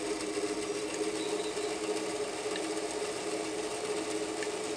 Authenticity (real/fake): real